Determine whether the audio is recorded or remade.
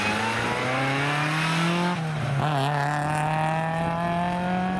recorded